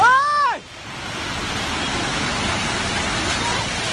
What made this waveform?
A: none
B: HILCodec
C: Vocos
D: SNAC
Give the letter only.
A